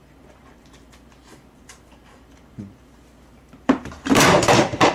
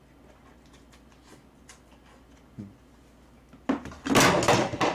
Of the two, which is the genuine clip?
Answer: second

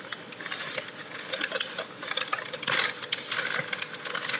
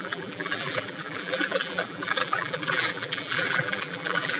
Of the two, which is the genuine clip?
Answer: first